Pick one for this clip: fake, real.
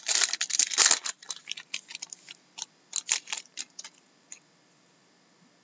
real